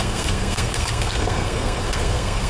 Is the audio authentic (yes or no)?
no